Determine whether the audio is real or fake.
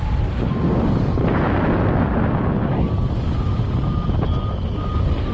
real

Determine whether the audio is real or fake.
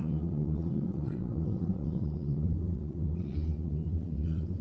fake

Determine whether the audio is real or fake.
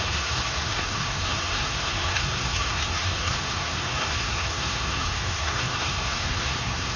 fake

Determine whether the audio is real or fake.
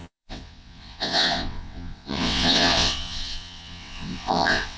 fake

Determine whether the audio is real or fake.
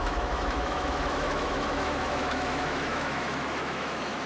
fake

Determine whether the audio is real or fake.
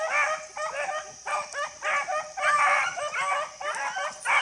real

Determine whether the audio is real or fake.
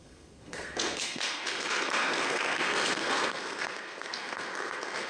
fake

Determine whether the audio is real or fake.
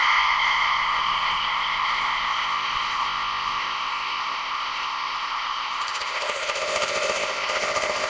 fake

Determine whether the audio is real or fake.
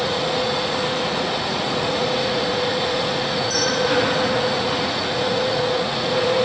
fake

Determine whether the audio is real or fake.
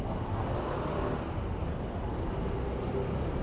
real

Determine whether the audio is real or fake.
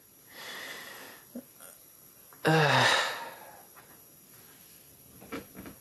real